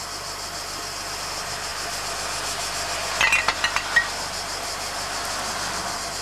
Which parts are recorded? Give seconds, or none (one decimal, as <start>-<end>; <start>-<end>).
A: 0.0-6.2